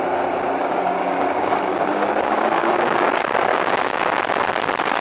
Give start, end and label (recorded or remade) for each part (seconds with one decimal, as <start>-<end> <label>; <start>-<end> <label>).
0.0-0.6 recorded; 0.6-3.1 remade; 3.1-3.5 recorded; 3.5-4.2 remade; 4.2-5.0 recorded